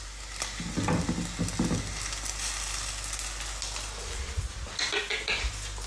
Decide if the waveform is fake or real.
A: real